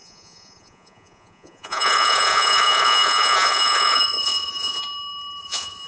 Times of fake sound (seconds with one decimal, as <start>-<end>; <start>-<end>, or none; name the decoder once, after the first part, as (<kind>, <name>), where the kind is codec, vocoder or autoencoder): 0.0-4.8 (vocoder, Vocos); 5.4-5.9